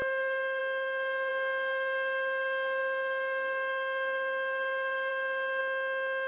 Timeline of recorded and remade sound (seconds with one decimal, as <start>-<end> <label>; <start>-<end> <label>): 0.0-5.6 remade; 5.6-6.3 recorded